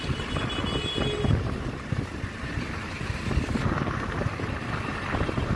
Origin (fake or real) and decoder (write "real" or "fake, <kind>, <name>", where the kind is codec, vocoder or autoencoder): real